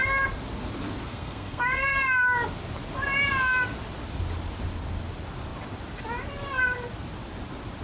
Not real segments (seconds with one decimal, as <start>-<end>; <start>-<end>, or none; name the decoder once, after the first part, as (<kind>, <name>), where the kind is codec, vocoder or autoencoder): 1.1-2.0 (codec, SNAC)